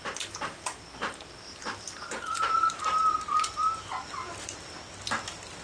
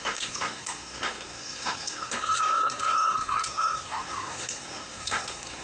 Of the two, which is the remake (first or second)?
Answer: second